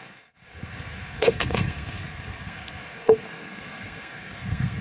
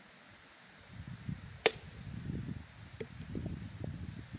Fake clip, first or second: first